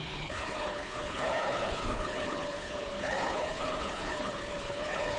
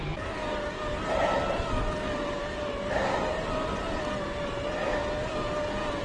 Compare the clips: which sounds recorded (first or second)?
second